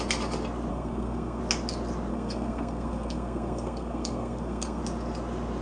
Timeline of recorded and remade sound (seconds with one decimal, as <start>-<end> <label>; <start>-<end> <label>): 0.0-0.7 recorded; 0.7-1.4 remade; 1.4-2.1 recorded; 2.1-4.8 remade; 4.8-5.6 recorded